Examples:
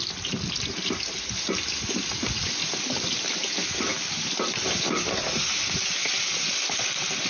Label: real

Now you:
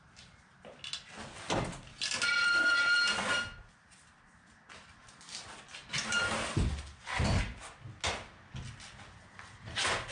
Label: real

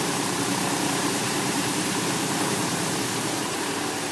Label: fake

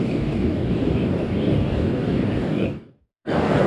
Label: fake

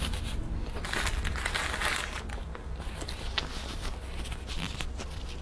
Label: real